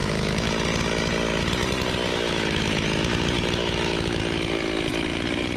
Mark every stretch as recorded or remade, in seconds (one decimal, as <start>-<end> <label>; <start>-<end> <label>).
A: 0.0-0.5 remade; 0.5-2.1 recorded; 2.1-4.2 remade; 4.2-5.6 recorded